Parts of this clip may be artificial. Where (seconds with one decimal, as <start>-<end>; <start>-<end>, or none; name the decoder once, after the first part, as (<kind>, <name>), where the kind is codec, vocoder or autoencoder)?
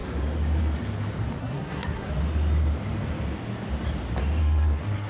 1.4-2.1 (codec, SNAC); 4.4-5.1